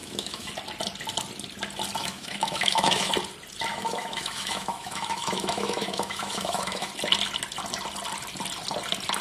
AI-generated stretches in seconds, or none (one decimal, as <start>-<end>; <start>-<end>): 0.0-0.5; 2.0-3.1; 3.7-6.9